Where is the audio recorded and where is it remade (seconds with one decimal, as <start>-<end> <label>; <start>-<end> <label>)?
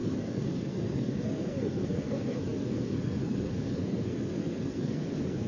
0.0-5.5 remade